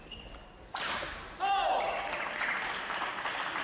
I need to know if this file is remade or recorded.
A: recorded